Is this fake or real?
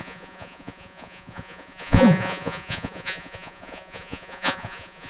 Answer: fake